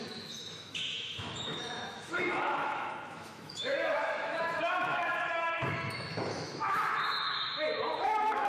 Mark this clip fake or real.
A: fake